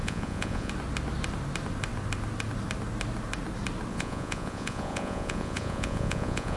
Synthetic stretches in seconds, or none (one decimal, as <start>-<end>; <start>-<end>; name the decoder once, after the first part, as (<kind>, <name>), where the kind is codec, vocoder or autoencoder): 0.0-0.7 (vocoder, Vocos); 3.9-6.6